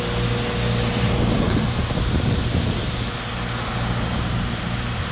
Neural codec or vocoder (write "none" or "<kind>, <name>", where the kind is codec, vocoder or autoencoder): none